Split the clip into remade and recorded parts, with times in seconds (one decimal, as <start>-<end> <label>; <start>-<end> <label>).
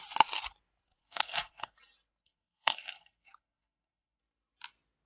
0.0-1.0 recorded; 1.0-1.8 remade; 1.8-2.2 recorded; 2.2-4.2 remade; 4.2-5.1 recorded